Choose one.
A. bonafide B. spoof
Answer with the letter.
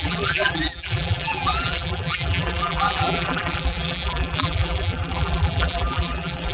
B